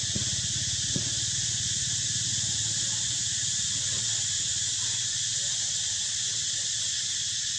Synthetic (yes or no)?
no